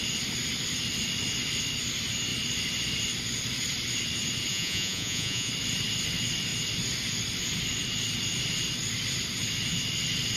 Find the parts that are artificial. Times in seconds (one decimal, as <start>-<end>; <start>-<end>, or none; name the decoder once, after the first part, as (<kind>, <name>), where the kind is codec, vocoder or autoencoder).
4.5-5.5 (vocoder, Vocos)